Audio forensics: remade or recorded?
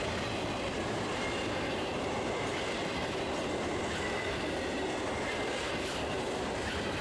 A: remade